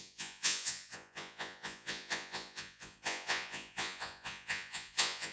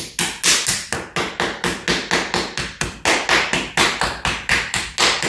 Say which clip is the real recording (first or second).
second